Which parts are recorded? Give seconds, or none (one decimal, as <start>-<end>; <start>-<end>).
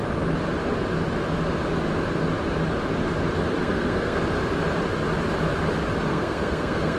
0.0-3.6; 4.2-6.1